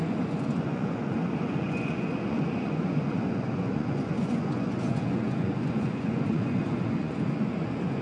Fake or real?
fake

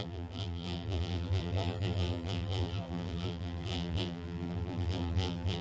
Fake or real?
fake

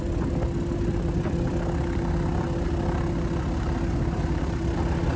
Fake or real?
real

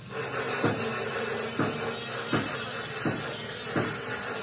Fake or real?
real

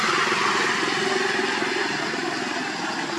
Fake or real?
real